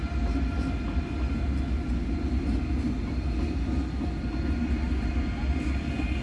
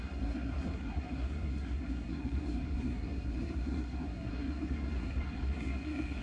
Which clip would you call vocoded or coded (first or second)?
second